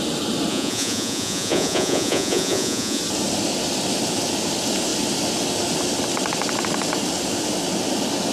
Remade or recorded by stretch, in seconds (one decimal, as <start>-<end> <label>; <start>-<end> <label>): 0.0-0.5 recorded; 0.5-3.0 remade; 3.0-8.3 recorded